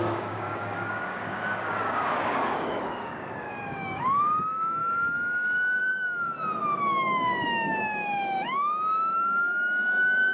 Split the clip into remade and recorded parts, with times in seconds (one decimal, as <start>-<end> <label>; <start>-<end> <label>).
0.0-6.3 remade; 6.3-6.8 recorded; 6.8-10.3 remade